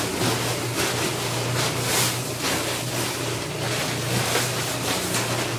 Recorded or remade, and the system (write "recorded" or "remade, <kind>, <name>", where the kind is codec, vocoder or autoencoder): recorded